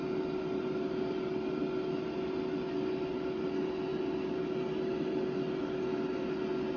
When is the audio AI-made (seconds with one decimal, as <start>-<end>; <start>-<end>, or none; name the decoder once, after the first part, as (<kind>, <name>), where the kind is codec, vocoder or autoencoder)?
none

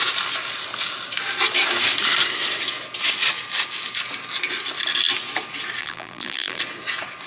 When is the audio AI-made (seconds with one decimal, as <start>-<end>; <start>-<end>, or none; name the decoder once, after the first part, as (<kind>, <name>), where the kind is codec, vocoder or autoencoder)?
5.8-6.6 (vocoder, BigVGAN v2)

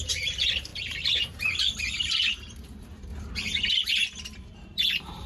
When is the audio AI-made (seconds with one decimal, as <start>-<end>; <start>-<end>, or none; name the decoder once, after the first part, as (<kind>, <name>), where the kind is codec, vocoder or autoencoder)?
0.0-3.1 (vocoder, BigVGAN v2); 3.7-5.3

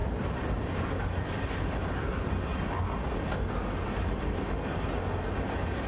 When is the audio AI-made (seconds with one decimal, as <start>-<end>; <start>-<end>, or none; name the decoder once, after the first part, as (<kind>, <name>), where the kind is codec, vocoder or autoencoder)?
none

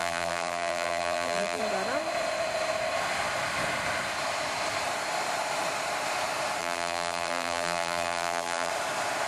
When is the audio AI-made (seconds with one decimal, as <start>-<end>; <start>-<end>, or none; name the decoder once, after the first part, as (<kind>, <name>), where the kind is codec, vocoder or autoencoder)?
0.0-1.6 (vocoder, BigVGAN v2); 6.6-8.7

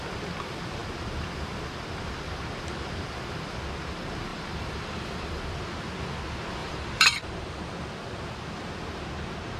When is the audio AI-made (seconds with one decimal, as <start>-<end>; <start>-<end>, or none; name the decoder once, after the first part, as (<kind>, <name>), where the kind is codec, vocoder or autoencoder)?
4.3-5.4 (vocoder, BigVGAN v2); 6.6-7.6

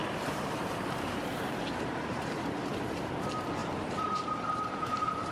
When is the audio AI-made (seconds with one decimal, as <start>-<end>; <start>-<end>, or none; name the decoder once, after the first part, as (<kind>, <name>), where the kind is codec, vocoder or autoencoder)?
0.0-2.7 (vocoder, BigVGAN v2); 3.6-5.3